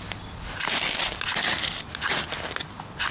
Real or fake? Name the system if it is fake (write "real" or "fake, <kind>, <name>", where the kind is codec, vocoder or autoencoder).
real